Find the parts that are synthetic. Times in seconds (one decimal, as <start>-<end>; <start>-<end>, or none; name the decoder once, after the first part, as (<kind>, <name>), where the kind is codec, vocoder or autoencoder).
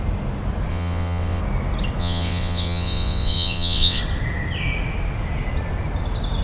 0.7-1.4 (vocoder, WaveNeXt); 2.0-4.0